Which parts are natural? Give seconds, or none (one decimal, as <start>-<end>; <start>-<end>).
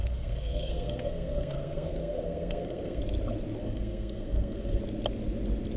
3.0-3.6; 4.8-5.8